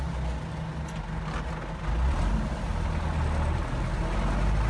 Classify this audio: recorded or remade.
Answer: recorded